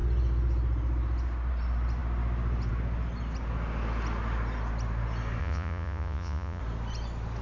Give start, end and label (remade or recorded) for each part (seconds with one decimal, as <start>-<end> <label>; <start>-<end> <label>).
0.0-5.4 recorded; 5.4-6.6 remade; 6.6-7.4 recorded